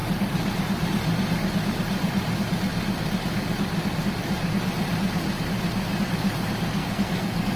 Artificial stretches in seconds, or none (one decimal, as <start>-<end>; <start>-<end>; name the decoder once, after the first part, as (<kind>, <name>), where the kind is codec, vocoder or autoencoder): 6.7-7.6 (codec, SNAC)